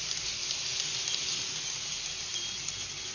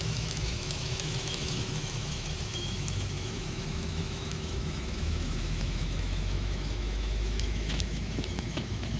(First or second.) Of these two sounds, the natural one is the first